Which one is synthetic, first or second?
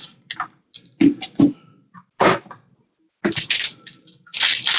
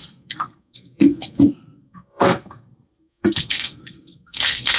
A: second